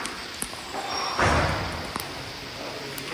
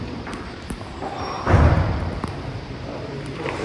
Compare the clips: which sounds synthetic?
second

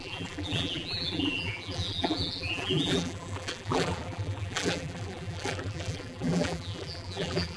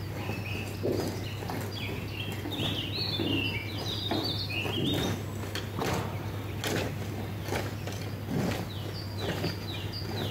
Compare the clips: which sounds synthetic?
first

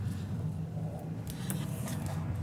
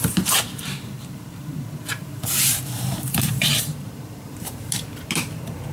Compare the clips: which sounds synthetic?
second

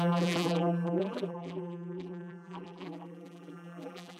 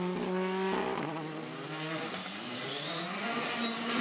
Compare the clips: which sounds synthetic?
first